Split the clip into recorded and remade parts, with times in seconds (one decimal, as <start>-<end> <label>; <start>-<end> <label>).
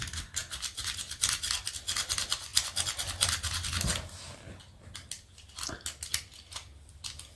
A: 0.0-0.4 recorded; 0.4-1.0 remade; 1.0-7.4 recorded